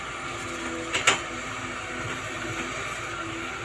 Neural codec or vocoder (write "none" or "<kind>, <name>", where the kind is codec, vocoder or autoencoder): none